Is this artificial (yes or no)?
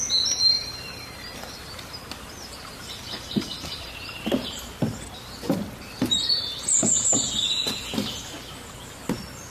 no